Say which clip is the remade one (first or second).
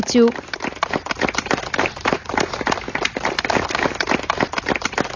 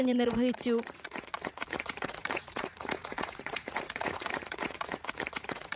second